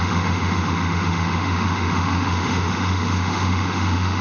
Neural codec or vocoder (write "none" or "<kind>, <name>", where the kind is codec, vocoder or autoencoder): autoencoder, DAC-VAE